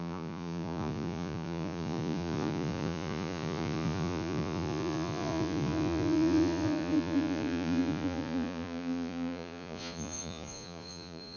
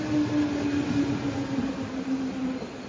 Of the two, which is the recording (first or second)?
second